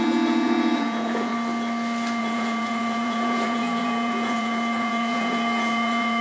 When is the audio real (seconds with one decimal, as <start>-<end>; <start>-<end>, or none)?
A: 1.3-2.2